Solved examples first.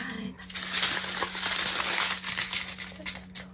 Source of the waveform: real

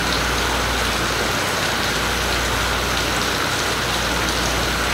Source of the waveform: real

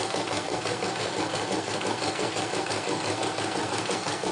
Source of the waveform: fake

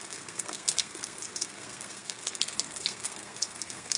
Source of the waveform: fake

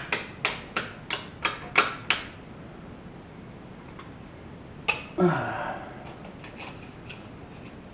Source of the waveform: real